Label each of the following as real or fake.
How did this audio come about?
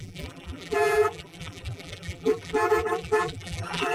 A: fake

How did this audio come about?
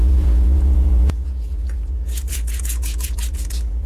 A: fake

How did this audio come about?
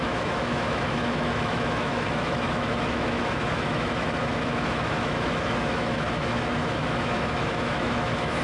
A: fake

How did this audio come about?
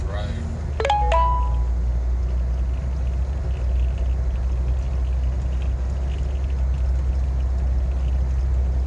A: real